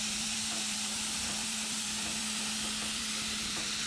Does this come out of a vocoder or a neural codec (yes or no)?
yes